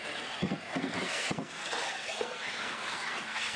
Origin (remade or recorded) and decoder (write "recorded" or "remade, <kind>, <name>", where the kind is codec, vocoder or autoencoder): remade, codec, SNAC